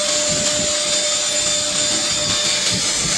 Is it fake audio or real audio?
real